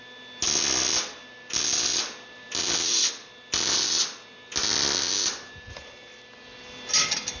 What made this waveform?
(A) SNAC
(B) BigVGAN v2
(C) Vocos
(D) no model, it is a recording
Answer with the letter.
D